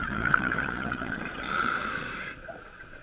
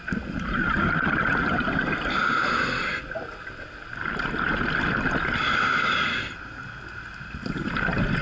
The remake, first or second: first